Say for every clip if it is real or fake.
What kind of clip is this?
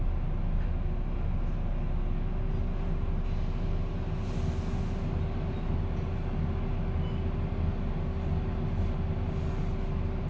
real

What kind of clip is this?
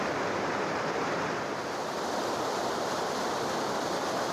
real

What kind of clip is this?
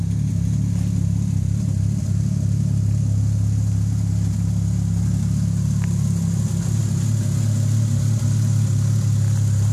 real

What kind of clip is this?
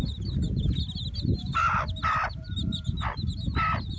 real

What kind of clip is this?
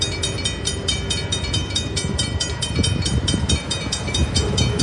fake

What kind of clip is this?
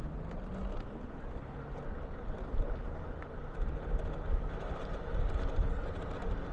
real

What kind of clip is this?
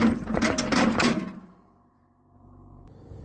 fake